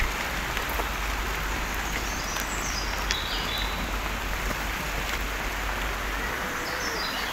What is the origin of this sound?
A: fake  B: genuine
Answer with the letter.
B